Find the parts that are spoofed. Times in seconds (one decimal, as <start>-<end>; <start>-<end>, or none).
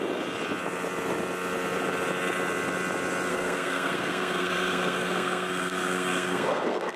3.3-7.0